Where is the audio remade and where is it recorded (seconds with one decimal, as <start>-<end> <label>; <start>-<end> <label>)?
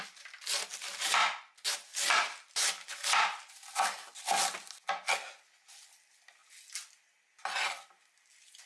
0.0-8.7 recorded